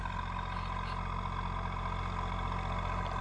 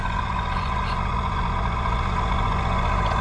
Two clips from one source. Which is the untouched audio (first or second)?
first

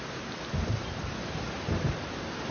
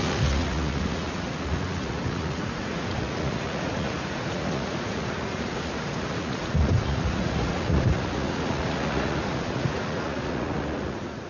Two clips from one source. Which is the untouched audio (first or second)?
first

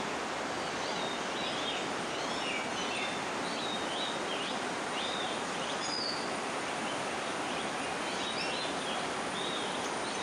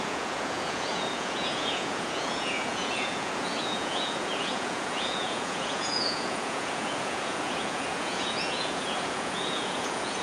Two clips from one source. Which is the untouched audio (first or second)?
first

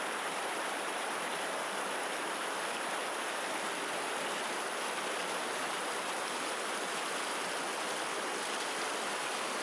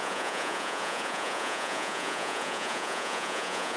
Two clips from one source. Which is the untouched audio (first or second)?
first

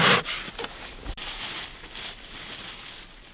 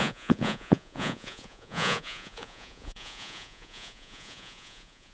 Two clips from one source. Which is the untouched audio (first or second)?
first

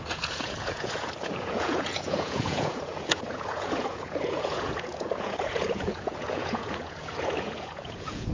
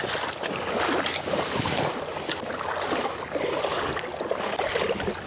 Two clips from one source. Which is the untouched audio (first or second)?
second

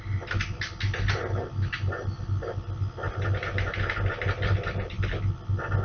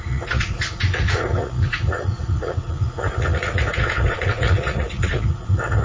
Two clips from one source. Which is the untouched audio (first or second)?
first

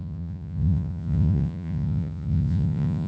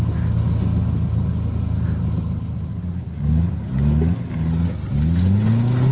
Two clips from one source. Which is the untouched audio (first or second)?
second